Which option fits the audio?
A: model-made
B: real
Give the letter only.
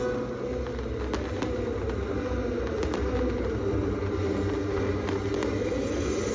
B